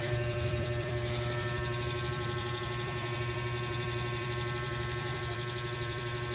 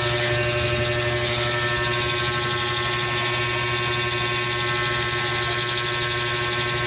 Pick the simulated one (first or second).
first